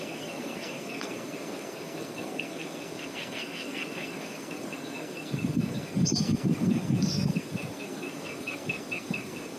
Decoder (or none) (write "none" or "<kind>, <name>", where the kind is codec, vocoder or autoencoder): codec, SNAC